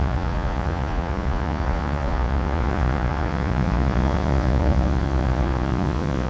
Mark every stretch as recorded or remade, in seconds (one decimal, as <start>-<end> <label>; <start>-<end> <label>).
0.0-6.3 remade